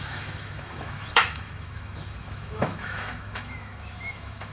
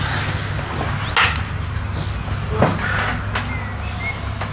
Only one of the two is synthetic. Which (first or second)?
first